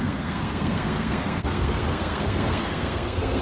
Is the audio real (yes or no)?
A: no